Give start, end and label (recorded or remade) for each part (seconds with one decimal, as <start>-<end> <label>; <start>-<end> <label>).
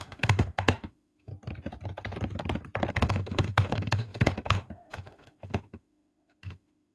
0.0-1.3 remade; 1.3-2.9 recorded; 2.9-6.9 remade